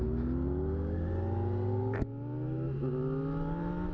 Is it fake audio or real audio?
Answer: real